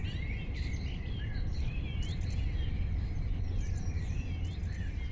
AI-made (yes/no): no